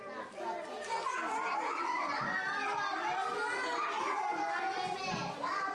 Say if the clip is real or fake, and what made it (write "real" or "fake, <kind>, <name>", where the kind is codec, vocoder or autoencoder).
real